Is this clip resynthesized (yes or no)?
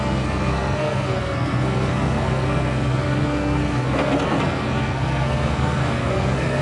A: yes